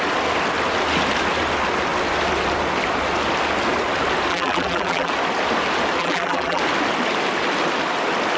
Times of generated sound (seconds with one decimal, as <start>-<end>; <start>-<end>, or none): 4.3-5.1; 6.0-6.6